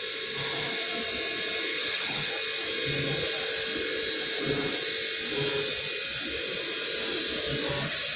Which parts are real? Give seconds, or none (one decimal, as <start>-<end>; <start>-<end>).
0.0-1.7; 2.3-8.2